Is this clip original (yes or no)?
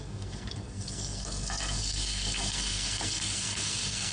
no